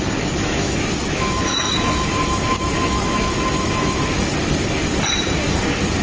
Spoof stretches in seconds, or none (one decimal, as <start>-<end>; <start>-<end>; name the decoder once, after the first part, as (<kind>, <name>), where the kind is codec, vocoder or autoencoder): 0.4-4.0 (autoencoder, DAC-VAE)